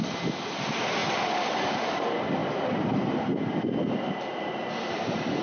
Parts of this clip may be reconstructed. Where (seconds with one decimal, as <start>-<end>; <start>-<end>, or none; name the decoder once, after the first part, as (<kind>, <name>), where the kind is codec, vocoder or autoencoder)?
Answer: 0.0-5.4 (vocoder, BigVGAN v2)